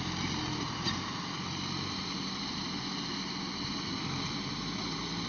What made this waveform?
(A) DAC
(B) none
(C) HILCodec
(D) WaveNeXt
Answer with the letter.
B